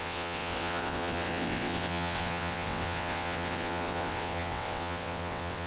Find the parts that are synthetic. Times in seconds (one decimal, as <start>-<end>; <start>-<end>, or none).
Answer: 0.0-5.7